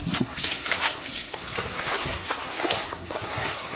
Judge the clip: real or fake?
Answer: fake